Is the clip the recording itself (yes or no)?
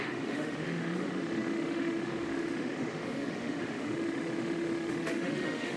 no